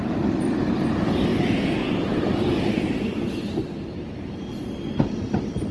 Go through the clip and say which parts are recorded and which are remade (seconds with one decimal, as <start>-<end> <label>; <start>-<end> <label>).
0.0-1.3 recorded; 1.3-3.0 remade; 3.0-5.7 recorded